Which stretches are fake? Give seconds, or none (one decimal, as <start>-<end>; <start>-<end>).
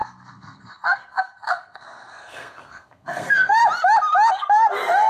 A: 0.0-3.6; 4.3-5.1